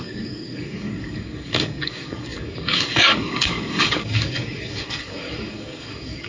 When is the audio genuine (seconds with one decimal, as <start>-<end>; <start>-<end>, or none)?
none

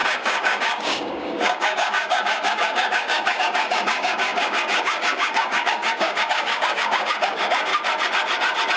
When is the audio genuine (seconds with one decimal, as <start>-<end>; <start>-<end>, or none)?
7.7-8.8